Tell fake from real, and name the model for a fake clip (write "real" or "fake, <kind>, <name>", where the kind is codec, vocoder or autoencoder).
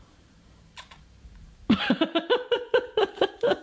fake, vocoder, BigVGAN v2